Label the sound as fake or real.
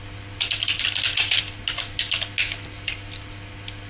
real